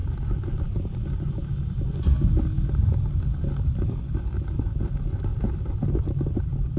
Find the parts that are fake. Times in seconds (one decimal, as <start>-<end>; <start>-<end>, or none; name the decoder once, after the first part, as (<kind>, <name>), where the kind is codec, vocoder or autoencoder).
5.3-6.8 (vocoder, BigVGAN v2)